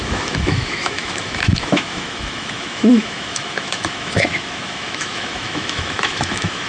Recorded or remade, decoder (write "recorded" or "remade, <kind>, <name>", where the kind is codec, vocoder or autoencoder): remade, autoencoder, DAC-VAE